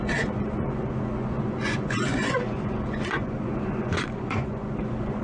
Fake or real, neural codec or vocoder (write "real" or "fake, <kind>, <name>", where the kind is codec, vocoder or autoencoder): fake, vocoder, Vocos